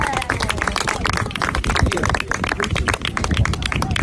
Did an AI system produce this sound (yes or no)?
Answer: yes